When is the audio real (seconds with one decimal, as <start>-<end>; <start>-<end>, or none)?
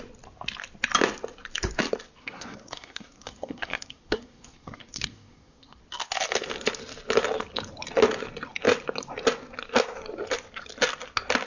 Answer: 0.0-2.2; 5.8-11.5